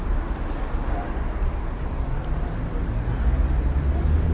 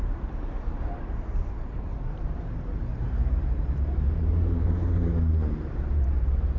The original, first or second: first